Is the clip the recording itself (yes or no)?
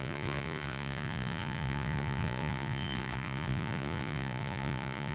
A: no